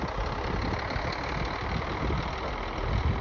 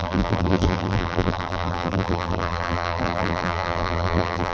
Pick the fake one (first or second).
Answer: second